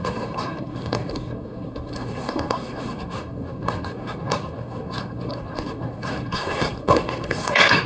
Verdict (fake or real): fake